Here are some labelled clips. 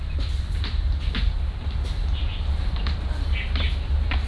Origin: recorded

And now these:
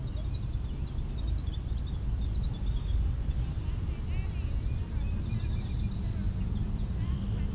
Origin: recorded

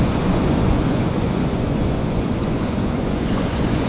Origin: remade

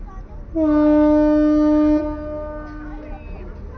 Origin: recorded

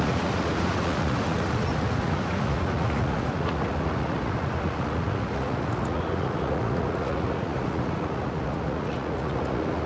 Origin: remade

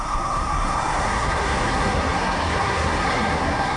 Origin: remade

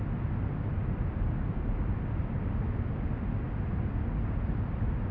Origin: recorded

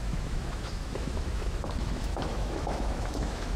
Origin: remade